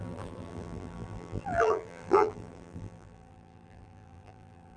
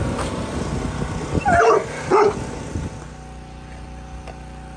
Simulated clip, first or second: first